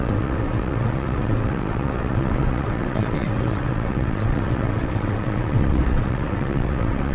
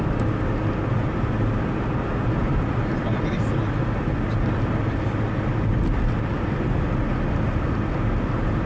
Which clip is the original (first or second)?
second